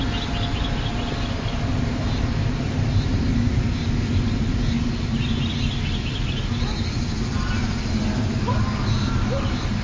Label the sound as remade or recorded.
recorded